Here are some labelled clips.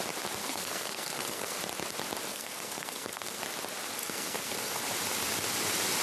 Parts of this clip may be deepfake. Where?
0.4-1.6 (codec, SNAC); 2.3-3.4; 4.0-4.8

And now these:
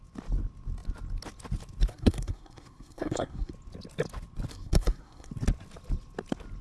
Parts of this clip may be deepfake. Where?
1.9-3.5 (codec, SNAC); 4.5-5.3

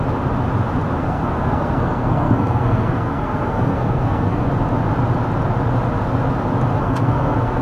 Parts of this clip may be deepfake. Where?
1.0-4.5 (codec, SNAC); 6.8-7.6

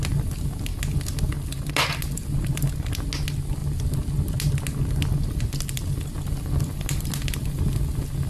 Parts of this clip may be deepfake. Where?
none